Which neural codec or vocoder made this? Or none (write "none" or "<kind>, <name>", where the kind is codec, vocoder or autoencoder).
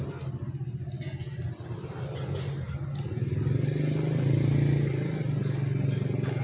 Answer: none